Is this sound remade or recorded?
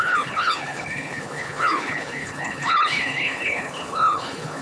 remade